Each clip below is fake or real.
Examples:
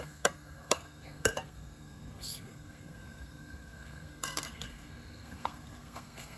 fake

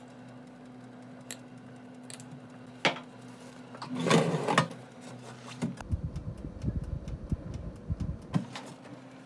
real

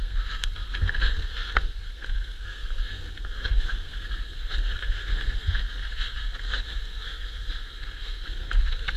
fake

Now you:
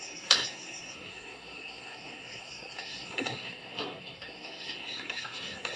fake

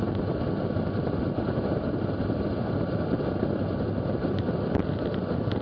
real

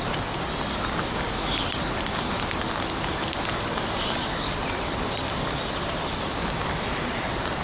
real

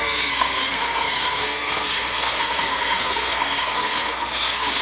fake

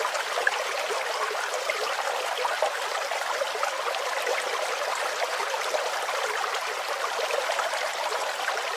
real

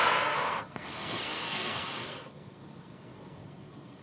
fake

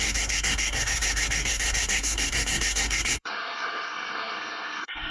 fake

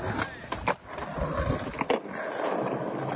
real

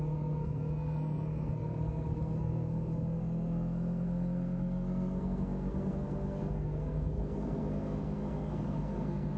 fake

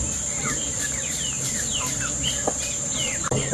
real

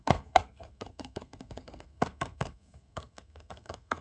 fake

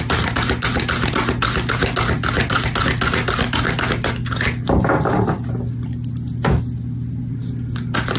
real